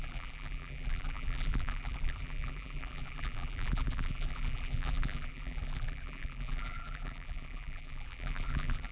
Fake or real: fake